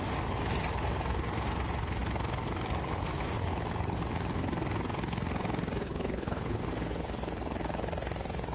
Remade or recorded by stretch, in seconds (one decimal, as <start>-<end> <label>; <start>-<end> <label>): 0.0-5.8 recorded; 5.8-6.6 remade; 6.6-8.5 recorded